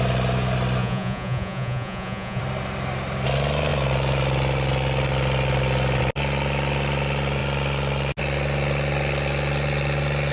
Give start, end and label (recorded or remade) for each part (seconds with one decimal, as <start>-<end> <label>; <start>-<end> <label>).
0.0-0.8 recorded; 0.8-2.4 remade; 2.4-10.3 recorded